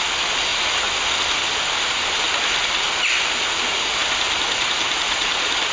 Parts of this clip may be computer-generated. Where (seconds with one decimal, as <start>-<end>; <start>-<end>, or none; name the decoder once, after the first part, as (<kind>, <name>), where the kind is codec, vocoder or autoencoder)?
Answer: none

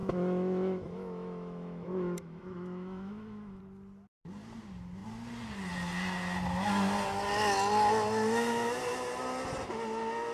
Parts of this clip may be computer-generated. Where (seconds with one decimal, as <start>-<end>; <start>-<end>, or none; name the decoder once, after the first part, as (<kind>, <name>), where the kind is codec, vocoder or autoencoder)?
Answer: 0.0-3.6 (autoencoder, DAC-VAE)

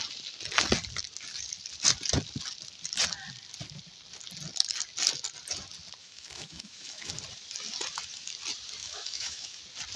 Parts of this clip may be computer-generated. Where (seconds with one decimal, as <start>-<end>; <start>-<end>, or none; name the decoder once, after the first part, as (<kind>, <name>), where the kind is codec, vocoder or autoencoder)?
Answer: 6.0-7.1 (autoencoder, DAC-VAE); 8.8-9.6

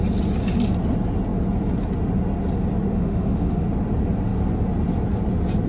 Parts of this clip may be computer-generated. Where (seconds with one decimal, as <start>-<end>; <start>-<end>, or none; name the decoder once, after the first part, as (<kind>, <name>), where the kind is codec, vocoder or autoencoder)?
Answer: 2.9-3.6 (autoencoder, DAC-VAE)

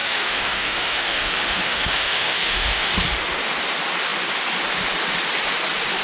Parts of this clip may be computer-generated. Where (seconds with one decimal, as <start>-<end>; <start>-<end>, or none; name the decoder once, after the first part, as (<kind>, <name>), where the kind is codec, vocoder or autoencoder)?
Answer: 0.0-2.9 (autoencoder, DAC-VAE)

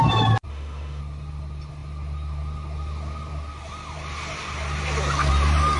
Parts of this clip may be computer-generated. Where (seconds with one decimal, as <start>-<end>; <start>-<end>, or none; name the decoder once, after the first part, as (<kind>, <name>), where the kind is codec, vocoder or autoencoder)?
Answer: 0.5-1.0 (autoencoder, DAC-VAE)